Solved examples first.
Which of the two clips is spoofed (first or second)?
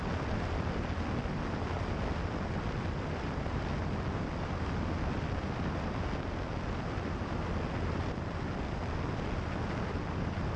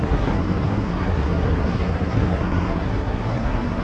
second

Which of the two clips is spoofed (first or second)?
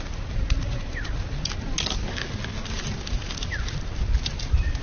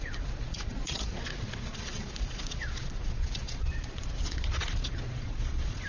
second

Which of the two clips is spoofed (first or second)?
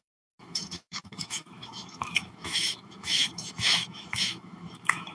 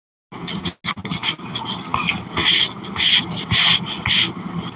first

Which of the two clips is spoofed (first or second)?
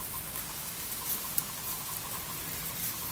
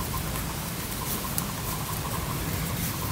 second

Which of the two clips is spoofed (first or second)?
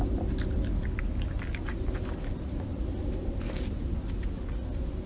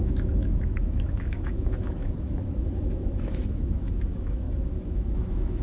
second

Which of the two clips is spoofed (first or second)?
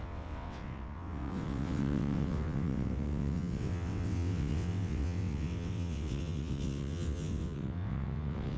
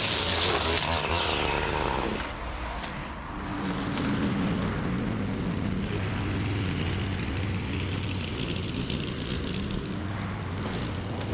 first